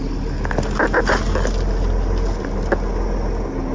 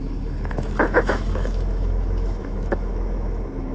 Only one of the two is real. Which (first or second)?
first